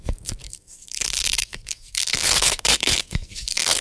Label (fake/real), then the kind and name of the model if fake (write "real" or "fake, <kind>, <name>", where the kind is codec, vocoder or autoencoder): fake, codec, SNAC